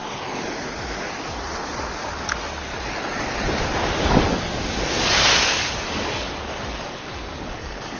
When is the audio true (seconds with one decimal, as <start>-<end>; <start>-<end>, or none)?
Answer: 0.0-4.0